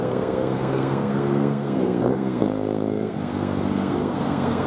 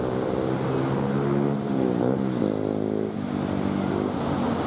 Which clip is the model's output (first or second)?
first